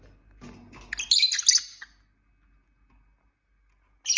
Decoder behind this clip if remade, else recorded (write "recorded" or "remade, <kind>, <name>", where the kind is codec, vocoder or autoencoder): recorded